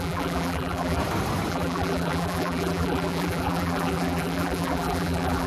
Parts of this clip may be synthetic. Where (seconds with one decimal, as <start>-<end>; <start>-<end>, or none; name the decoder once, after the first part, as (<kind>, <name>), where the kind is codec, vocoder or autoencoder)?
0.0-1.0 (vocoder, BigVGAN v2); 1.5-5.5

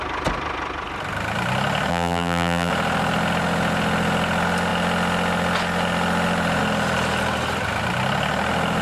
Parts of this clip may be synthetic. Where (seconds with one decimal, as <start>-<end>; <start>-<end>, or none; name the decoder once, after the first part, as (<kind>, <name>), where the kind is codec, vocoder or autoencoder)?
1.9-2.7 (vocoder, BigVGAN v2)

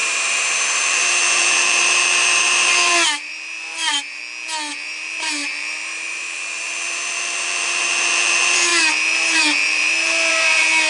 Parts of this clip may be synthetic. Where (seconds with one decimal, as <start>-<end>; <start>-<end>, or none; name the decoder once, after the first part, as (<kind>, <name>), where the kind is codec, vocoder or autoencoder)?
0.0-4.2 (vocoder, BigVGAN v2); 4.7-10.9

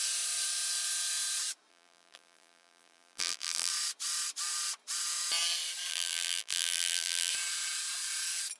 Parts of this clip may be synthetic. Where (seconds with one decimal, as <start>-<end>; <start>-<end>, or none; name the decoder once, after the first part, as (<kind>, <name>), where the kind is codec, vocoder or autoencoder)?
1.7-3.7 (vocoder, BigVGAN v2); 5.9-7.3

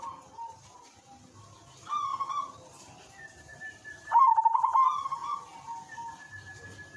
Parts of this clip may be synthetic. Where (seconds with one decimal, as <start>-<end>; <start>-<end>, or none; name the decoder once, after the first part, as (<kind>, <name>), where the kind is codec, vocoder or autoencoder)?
2.1-4.2 (vocoder, BigVGAN v2)

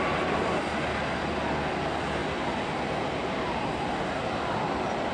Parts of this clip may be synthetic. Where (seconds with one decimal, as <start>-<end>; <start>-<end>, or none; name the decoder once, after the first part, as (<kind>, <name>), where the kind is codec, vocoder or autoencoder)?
none

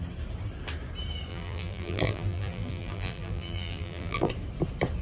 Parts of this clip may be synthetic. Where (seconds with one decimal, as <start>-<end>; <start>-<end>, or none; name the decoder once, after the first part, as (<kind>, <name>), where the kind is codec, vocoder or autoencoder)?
1.3-4.3 (vocoder, BigVGAN v2)